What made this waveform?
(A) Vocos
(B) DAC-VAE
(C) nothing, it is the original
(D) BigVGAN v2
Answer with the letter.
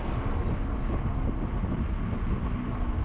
C